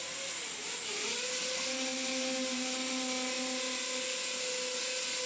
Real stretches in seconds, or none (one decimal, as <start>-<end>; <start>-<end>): 0.0-5.3